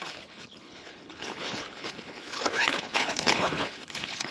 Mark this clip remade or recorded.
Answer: remade